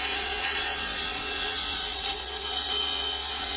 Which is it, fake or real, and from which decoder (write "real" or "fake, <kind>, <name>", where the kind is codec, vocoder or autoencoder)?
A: fake, vocoder, Vocos